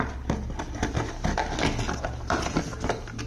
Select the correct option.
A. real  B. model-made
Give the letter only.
A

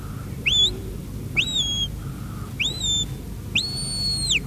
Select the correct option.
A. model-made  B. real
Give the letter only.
B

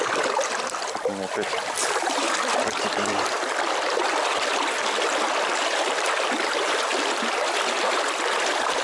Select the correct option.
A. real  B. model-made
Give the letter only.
B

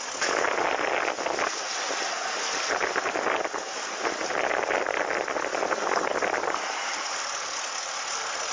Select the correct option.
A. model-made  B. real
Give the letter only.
B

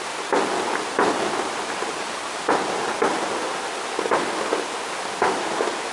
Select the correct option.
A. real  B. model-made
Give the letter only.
A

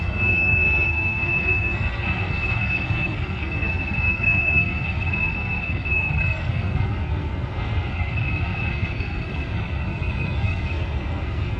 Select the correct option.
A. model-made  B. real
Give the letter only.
A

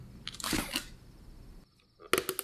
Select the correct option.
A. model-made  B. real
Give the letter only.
B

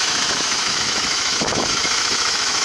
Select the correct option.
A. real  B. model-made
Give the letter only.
B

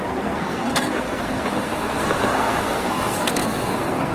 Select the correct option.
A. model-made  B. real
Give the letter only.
A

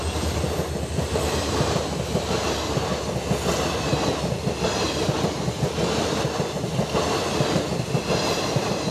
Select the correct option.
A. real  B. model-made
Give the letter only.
A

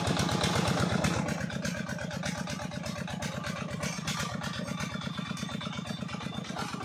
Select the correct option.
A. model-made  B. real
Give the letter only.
B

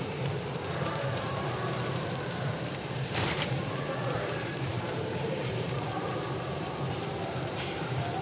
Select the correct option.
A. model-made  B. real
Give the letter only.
A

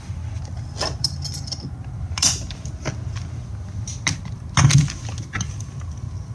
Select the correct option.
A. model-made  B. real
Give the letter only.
B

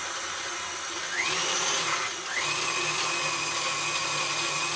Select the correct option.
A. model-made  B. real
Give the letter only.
B